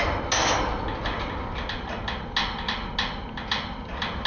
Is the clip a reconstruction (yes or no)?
no